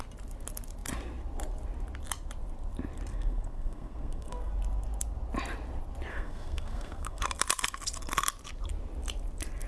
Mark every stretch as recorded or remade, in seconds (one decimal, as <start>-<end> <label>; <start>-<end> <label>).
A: 0.0-3.1 recorded; 3.1-4.5 remade; 4.5-6.1 recorded; 6.1-7.2 remade; 7.2-9.7 recorded